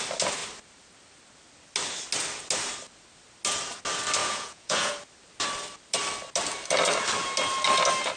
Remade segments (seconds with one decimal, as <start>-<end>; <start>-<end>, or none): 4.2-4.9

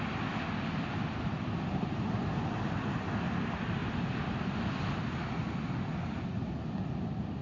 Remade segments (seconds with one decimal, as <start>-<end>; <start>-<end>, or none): none

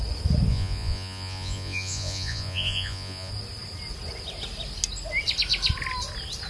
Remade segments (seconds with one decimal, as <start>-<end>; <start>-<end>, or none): 0.5-3.3

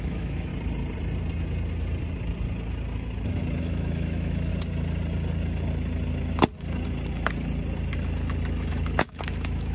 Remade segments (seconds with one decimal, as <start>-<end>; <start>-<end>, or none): 0.0-0.5; 3.6-4.5; 8.7-9.7

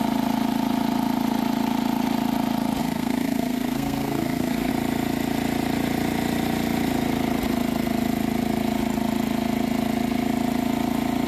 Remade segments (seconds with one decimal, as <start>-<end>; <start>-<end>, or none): 2.8-4.7